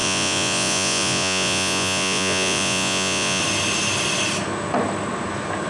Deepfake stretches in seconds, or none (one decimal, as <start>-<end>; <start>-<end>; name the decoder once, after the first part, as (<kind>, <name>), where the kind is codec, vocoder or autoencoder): 0.0-3.4 (vocoder, Vocos)